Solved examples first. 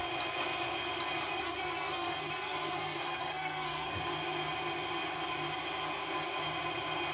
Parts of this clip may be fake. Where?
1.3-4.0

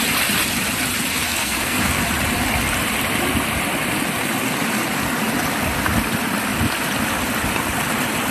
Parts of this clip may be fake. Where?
1.2-2.0

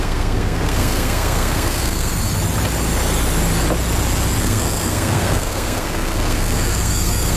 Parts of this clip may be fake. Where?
0.0-2.1; 4.4-7.4

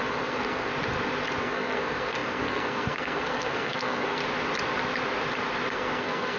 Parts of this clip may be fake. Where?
0.0-0.7; 1.4-4.2; 5.7-6.4